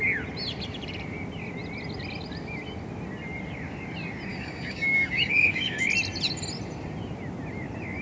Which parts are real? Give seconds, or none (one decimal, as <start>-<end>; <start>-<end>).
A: 0.0-4.3; 5.9-8.0